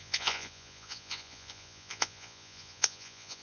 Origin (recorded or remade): remade